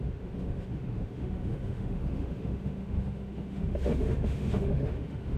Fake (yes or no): yes